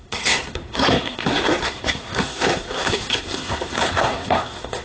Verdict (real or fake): fake